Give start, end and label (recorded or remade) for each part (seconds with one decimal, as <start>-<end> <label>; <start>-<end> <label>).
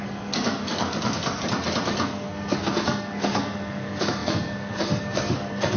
0.0-1.4 remade; 1.4-2.0 recorded; 2.0-5.8 remade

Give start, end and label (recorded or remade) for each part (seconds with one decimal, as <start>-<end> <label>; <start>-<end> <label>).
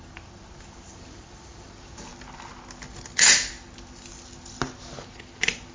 0.0-2.1 remade; 2.1-5.7 recorded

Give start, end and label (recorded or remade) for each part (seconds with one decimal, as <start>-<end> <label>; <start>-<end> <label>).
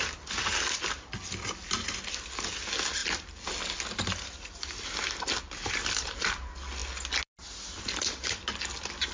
0.0-9.1 recorded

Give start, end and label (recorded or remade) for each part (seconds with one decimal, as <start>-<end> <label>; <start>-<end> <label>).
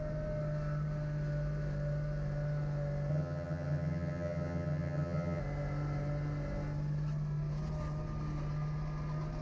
0.0-3.1 recorded; 3.1-5.4 remade; 5.4-9.4 recorded